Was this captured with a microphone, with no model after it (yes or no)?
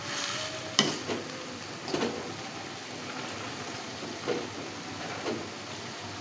yes